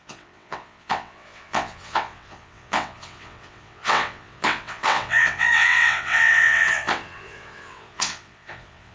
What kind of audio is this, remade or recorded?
remade